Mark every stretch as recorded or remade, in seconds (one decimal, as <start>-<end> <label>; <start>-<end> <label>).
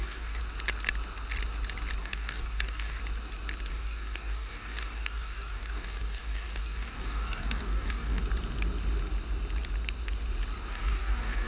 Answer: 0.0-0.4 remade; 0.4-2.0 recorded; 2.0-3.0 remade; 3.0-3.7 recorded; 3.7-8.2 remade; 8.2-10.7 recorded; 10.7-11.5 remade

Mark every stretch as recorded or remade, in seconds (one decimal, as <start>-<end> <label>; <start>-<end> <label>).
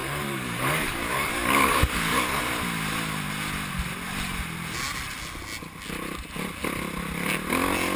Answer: 0.0-2.5 remade; 2.5-8.0 recorded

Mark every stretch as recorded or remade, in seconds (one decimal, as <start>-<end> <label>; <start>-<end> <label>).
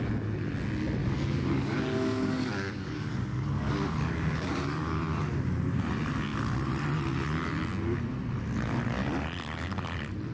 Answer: 0.0-1.0 recorded; 1.0-5.0 remade; 5.0-10.3 recorded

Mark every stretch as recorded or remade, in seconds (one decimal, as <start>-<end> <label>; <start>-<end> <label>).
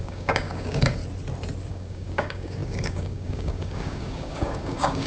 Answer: 0.0-1.0 remade; 1.0-1.7 recorded; 1.7-5.1 remade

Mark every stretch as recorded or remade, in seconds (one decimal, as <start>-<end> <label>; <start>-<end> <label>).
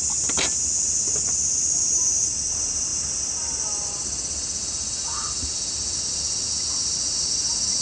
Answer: 0.0-7.8 recorded